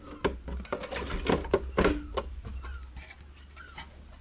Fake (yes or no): no